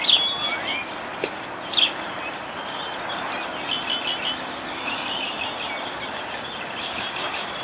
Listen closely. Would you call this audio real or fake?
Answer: real